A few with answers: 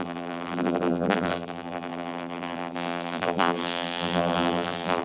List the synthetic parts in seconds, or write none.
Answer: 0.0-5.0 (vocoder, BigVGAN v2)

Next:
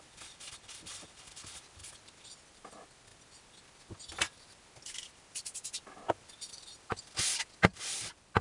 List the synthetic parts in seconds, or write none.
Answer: 0.0-1.8 (vocoder, BigVGAN v2); 2.5-3.1; 6.2-8.4

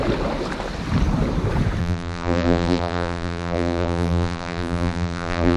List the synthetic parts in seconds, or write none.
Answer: 1.8-5.6 (vocoder, BigVGAN v2)

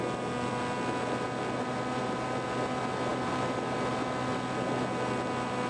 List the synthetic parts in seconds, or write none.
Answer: none

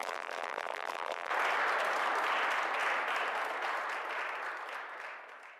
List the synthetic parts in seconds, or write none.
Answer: 0.0-1.3 (vocoder, BigVGAN v2)

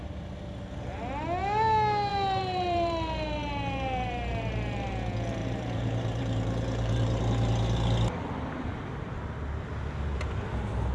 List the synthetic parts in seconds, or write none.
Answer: 2.1-4.9 (vocoder, BigVGAN v2); 5.4-7.2